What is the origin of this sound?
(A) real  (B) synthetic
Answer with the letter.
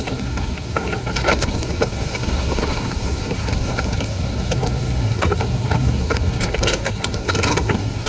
B